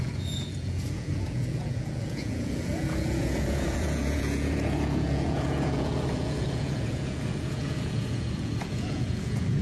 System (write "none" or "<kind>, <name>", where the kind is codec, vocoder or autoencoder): vocoder, Vocos